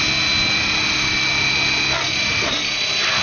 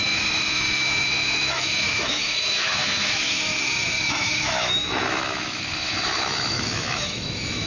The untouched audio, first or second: first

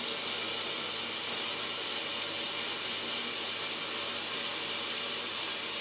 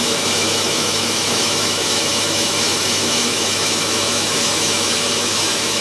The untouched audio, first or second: first